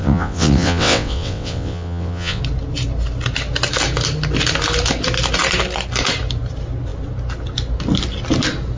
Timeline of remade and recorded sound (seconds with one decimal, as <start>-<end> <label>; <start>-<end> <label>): 0.0-2.4 remade; 2.4-8.8 recorded